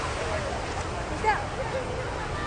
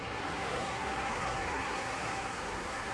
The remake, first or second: second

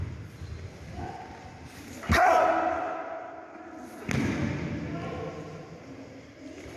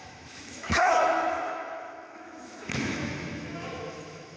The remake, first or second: second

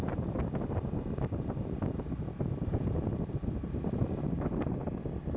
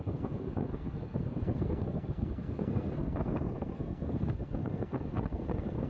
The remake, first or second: second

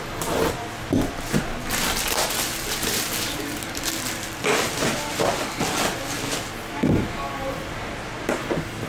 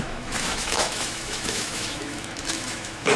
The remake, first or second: second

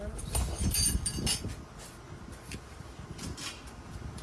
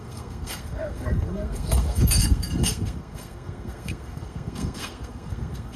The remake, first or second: second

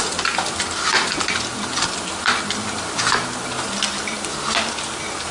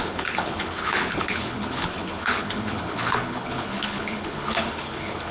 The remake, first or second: second